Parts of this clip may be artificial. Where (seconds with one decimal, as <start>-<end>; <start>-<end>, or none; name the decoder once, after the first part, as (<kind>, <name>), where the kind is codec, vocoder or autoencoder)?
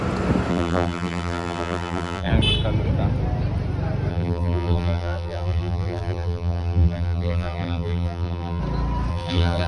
0.5-2.3 (vocoder, BigVGAN v2); 4.1-8.6; 9.1-9.7